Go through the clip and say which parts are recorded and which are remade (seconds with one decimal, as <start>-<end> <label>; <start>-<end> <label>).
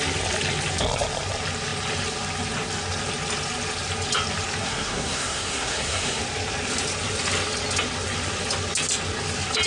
0.0-4.6 recorded; 4.6-6.2 remade; 6.2-9.7 recorded